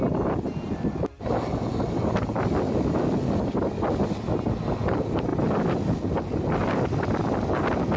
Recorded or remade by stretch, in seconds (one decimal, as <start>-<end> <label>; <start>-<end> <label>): 0.0-8.0 recorded